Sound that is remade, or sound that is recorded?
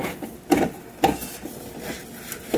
recorded